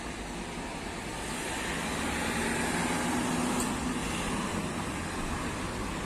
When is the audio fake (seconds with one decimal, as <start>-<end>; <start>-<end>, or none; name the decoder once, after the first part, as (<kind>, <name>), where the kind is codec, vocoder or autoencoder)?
4.5-5.2 (vocoder, BigVGAN v2)